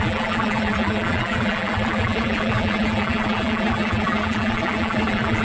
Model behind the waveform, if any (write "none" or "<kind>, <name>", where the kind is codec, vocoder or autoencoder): vocoder, BigVGAN v2